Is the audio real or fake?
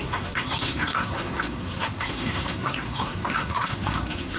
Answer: fake